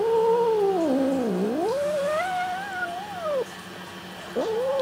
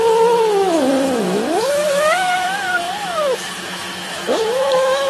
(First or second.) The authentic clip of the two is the first